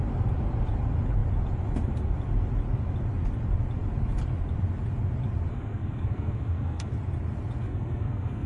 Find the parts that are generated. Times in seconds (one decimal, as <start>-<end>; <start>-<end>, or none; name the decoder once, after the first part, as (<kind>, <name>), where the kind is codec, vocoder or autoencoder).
5.5-6.9 (codec, SNAC); 7.6-8.5